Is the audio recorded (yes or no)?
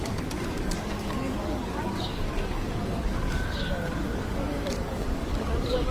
no